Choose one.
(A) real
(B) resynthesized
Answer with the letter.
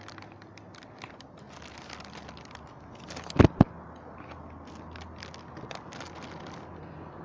A